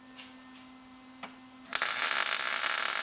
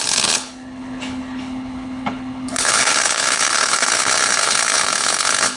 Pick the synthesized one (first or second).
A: second